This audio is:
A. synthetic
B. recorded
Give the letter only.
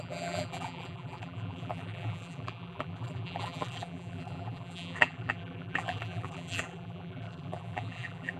A